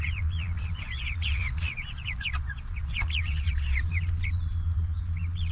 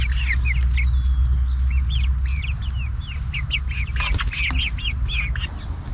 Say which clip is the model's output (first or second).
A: first